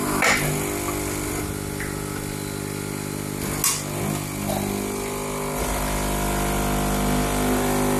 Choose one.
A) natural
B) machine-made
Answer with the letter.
A